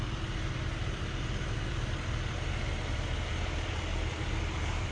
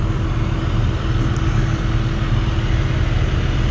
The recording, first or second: second